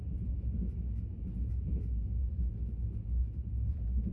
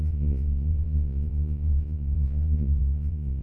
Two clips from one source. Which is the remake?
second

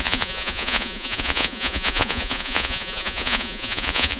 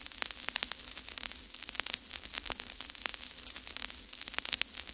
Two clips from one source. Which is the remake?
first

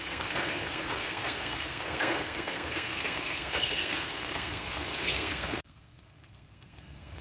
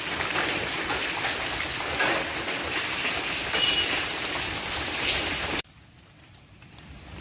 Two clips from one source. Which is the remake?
first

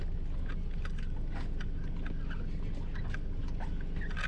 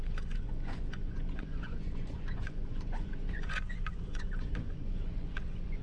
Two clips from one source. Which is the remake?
second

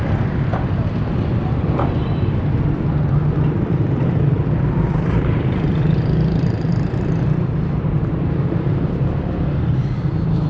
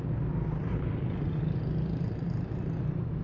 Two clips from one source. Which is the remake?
first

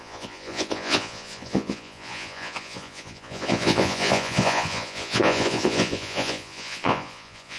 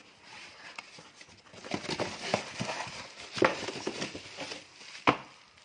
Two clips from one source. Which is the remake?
first